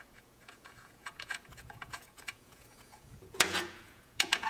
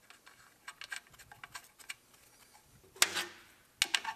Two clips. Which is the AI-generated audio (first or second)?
first